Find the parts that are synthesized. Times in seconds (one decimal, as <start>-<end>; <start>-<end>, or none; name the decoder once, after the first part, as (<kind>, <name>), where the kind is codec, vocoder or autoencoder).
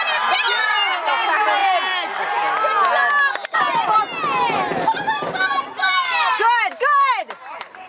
none